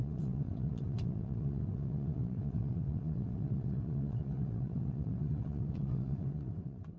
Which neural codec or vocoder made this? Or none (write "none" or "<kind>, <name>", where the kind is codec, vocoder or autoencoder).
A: vocoder, WaveNeXt